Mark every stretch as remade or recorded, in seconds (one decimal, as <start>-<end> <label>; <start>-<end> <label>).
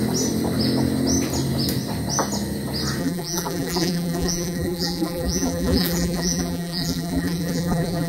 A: 0.0-3.0 recorded; 3.0-8.1 remade